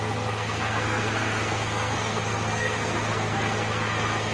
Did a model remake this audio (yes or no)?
yes